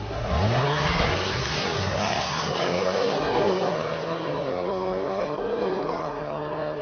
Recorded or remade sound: remade